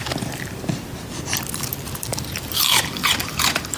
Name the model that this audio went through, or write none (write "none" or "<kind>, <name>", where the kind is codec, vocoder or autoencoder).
vocoder, BigVGAN v2